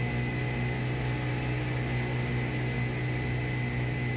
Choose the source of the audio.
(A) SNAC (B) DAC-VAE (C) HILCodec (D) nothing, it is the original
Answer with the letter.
D